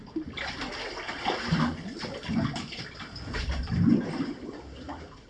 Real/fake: real